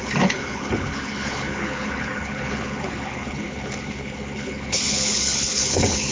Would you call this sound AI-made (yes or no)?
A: yes